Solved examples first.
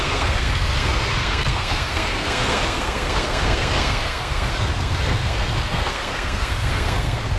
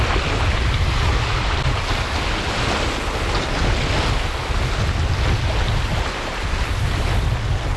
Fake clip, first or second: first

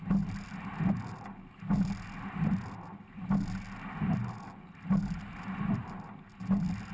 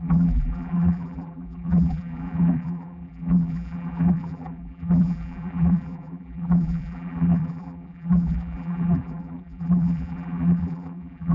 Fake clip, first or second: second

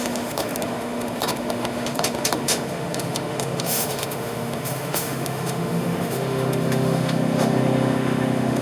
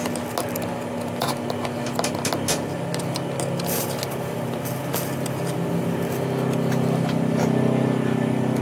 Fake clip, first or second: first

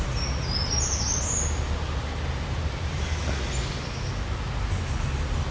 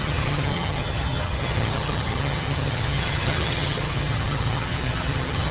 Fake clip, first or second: second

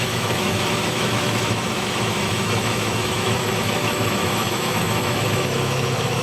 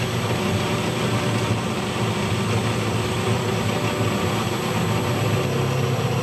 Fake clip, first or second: first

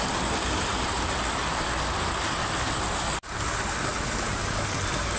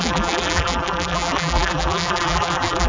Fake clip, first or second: second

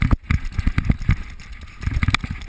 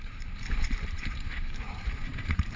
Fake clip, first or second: second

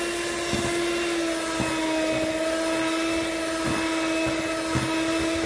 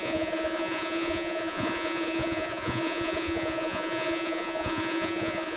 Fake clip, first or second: second